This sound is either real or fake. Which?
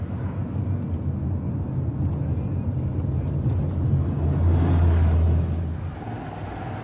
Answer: real